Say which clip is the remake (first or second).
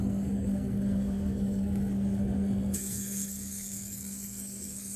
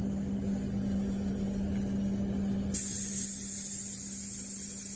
first